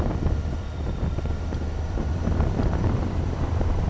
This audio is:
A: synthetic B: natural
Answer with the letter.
A